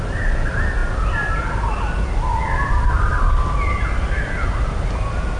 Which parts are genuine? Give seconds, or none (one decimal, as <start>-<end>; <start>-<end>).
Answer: 0.0-5.4